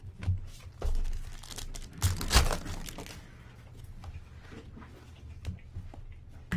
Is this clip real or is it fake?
real